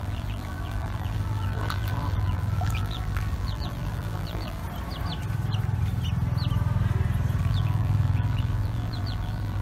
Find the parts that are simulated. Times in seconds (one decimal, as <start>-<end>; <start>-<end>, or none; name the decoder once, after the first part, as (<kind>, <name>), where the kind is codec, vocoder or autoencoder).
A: 0.0-4.6 (vocoder, BigVGAN v2); 7.4-9.6